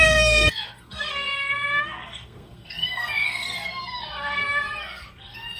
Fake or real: fake